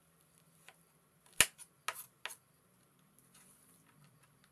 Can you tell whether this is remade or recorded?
recorded